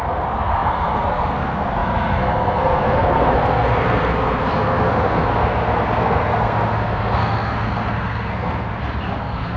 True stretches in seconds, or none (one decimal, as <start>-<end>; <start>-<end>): 8.7-9.2